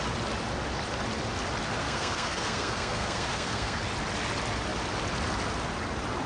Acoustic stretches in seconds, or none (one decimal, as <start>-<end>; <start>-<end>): 0.0-1.8; 3.8-6.3